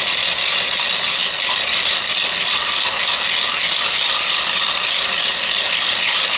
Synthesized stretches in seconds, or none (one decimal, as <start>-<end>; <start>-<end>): none